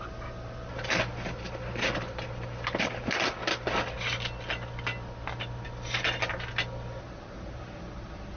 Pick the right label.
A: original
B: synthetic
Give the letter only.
A